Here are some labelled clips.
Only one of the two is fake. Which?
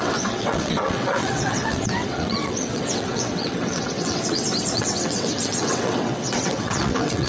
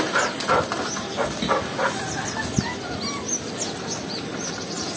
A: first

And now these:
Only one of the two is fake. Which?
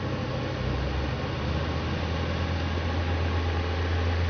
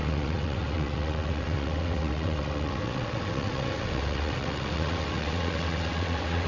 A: second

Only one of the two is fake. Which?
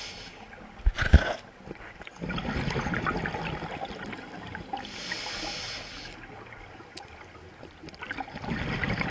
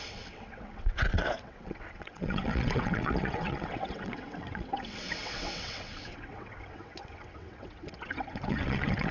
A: second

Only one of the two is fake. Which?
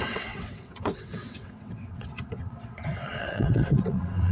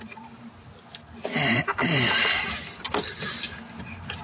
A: first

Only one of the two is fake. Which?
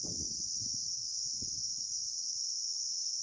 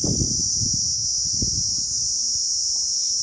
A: first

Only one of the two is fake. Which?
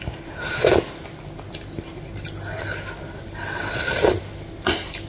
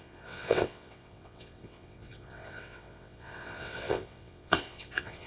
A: second